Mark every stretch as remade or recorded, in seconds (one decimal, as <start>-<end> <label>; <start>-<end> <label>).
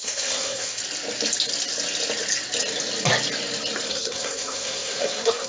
0.0-0.8 remade; 0.8-3.9 recorded; 3.9-5.5 remade